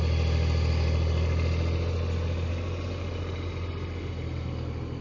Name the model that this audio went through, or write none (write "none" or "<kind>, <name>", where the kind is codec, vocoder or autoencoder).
none